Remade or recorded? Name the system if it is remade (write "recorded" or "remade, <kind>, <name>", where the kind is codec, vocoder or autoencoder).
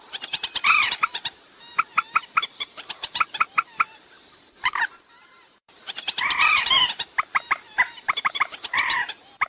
remade, vocoder, BigVGAN v2